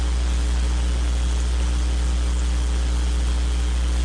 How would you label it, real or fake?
real